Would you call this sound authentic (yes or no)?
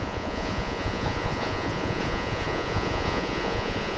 no